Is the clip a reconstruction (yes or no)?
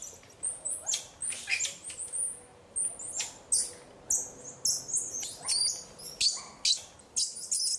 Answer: no